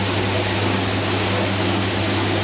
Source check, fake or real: real